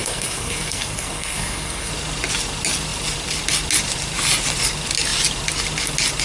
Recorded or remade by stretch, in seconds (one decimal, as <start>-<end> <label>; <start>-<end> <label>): 0.0-1.9 remade; 1.9-6.2 recorded